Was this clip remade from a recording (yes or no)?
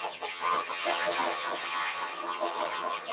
yes